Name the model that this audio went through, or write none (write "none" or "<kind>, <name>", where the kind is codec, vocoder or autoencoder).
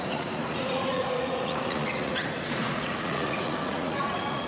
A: vocoder, Vocos